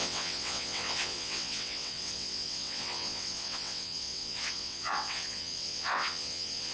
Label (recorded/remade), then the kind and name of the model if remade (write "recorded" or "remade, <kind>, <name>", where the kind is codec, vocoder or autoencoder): remade, vocoder, WaveNeXt